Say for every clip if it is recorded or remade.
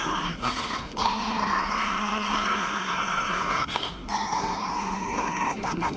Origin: remade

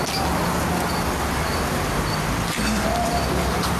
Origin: recorded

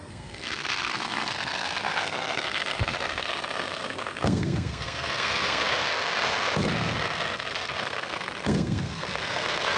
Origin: remade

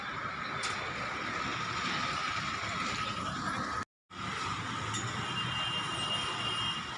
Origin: recorded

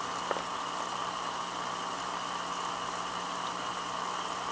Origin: recorded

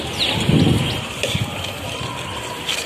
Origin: recorded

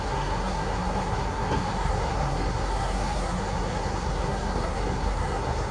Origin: remade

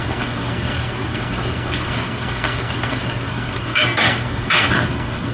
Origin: remade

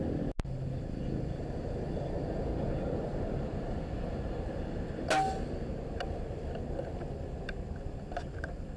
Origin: recorded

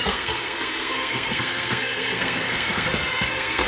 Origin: remade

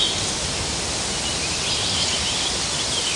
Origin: recorded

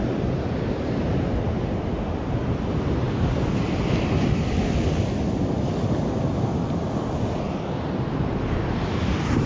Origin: recorded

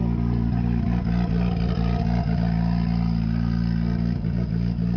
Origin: recorded